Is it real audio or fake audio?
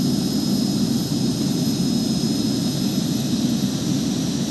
real